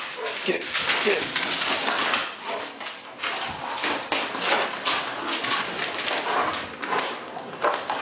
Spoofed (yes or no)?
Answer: no